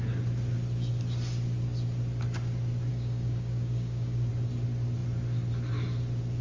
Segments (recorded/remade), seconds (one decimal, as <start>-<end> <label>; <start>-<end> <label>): 0.0-2.9 recorded; 2.9-4.3 remade; 4.3-6.4 recorded